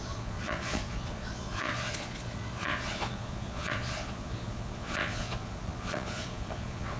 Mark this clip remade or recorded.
remade